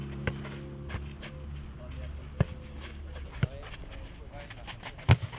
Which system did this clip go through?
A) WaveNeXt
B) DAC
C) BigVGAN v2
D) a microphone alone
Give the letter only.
D